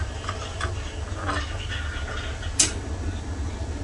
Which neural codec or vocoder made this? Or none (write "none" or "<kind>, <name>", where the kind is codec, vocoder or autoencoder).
none